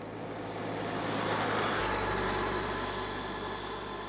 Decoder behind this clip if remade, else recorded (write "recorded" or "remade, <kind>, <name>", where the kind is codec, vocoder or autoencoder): recorded